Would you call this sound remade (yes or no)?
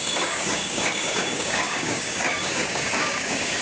yes